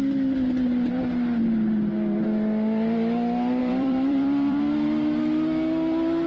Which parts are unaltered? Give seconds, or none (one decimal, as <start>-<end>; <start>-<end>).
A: 0.0-3.6; 4.6-6.3